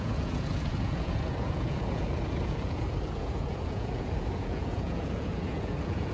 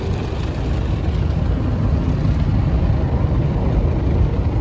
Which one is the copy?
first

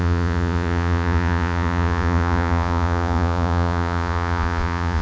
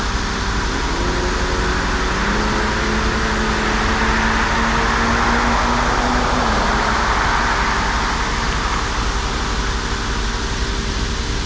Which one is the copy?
first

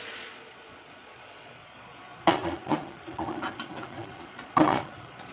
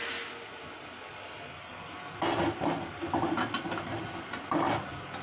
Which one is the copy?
first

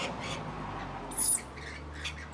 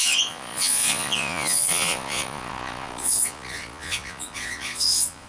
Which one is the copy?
second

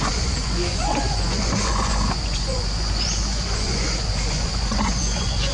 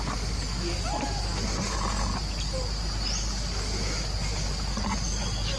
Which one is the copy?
first